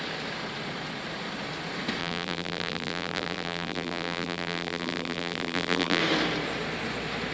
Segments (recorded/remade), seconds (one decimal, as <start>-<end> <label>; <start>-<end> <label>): 0.0-2.0 recorded; 2.0-6.0 remade; 6.0-7.3 recorded